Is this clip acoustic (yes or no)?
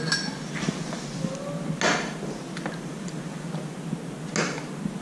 yes